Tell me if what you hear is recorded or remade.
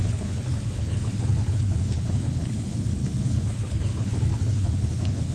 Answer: remade